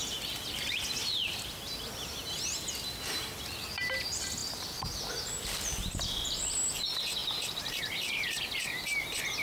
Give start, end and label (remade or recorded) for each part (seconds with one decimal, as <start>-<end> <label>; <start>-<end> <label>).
0.0-9.4 recorded